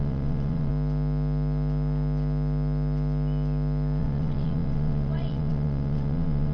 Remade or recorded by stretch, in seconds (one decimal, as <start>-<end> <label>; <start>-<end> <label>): 0.0-0.7 remade; 0.7-4.0 recorded; 4.0-6.5 remade